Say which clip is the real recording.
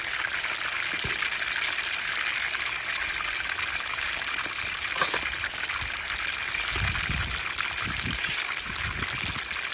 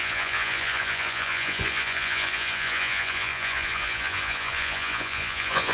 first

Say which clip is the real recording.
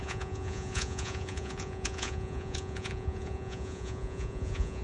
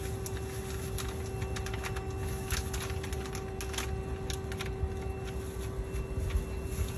second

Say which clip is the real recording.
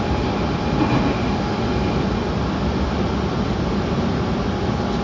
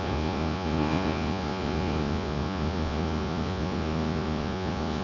first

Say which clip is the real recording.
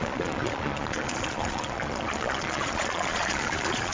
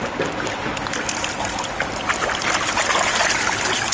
second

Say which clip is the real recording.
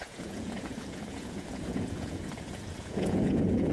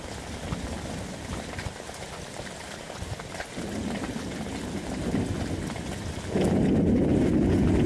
second